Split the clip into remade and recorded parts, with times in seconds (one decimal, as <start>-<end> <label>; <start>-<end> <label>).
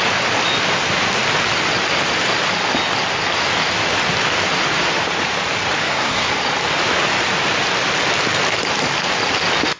0.0-5.8 recorded; 5.8-6.3 remade; 6.3-9.8 recorded